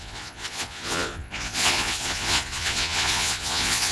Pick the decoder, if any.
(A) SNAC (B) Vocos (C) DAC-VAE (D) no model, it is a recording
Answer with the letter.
B